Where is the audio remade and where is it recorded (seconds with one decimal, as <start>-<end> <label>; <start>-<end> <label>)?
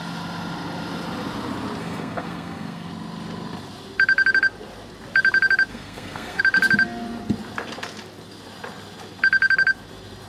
0.0-1.8 recorded; 1.8-2.9 remade; 2.9-5.7 recorded; 5.7-6.4 remade; 6.4-10.3 recorded